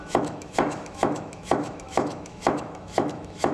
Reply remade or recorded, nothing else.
remade